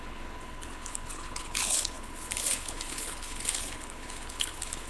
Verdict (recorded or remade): remade